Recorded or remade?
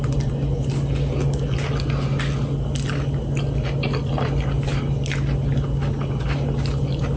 recorded